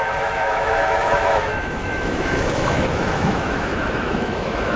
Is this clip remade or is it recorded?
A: remade